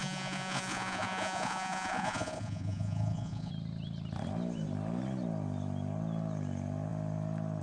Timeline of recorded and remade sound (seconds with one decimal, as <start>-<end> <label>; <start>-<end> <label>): 0.0-3.5 remade; 3.5-7.6 recorded